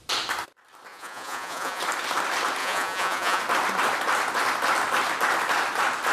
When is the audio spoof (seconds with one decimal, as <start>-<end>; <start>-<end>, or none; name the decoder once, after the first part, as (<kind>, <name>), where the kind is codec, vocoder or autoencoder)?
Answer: 0.9-1.8 (vocoder, Vocos); 2.6-3.4